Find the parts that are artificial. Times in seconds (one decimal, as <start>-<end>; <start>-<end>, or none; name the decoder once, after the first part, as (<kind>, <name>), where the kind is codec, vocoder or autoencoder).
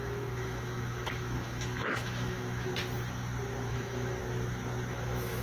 0.0-2.7 (autoencoder, DAC-VAE); 3.7-4.2; 4.9-5.4